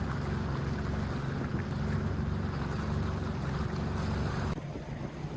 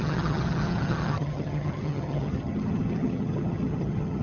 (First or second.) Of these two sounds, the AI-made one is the second